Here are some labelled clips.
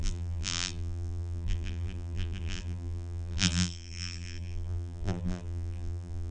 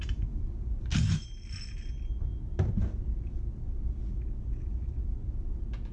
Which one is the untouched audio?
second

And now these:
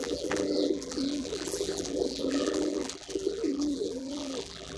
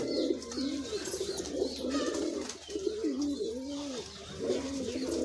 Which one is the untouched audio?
second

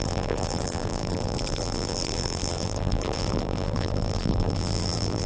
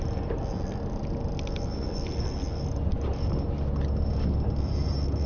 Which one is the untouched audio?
second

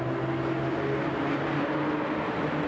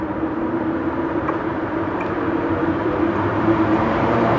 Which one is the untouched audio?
first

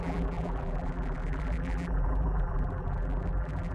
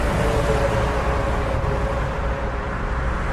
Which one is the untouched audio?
second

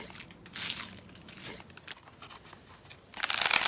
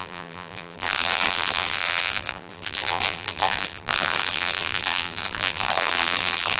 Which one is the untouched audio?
first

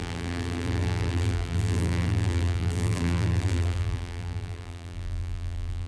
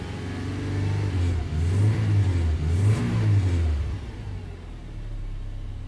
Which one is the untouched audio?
second